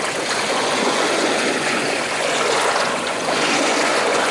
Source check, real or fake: fake